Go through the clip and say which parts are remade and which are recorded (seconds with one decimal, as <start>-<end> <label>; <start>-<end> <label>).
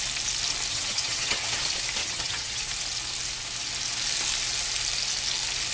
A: 0.0-0.7 recorded; 0.7-1.5 remade; 1.5-2.0 recorded; 2.0-2.6 remade; 2.6-5.7 recorded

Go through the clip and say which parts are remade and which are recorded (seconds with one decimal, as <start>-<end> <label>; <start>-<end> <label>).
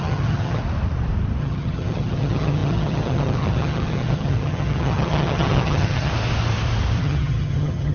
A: 0.0-0.6 remade; 0.6-1.4 recorded; 1.4-6.1 remade; 6.1-7.0 recorded; 7.0-7.9 remade